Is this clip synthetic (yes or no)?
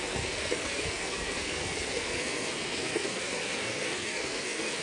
yes